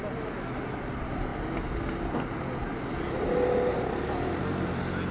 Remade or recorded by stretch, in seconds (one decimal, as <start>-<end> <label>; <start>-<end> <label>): 0.0-5.1 recorded